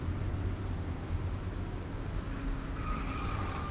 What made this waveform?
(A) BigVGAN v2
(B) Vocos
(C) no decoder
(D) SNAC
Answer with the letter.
C